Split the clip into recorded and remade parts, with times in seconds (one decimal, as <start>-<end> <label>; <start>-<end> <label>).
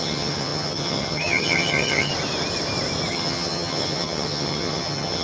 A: 0.0-2.1 remade; 2.1-3.1 recorded; 3.1-5.2 remade